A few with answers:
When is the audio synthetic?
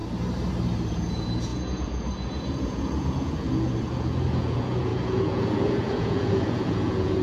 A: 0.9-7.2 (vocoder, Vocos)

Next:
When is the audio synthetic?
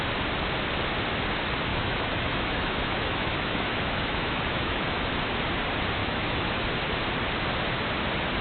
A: 1.7-5.1 (autoencoder, DAC-VAE); 6.0-6.6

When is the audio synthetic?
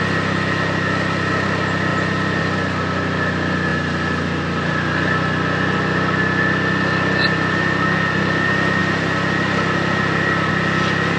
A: none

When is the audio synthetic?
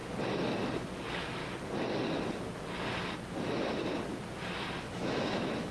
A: 0.8-1.4 (autoencoder, DAC-VAE); 4.8-5.7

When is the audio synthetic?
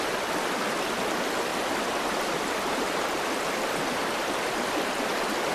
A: 1.5-3.2 (vocoder, BigVGAN v2); 4.0-4.9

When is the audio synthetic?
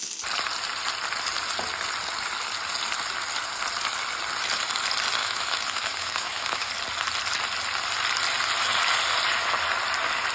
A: 5.2-6.7 (autoencoder, DAC-VAE)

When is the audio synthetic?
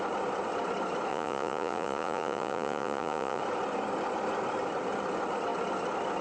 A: 1.1-3.4 (vocoder, Vocos)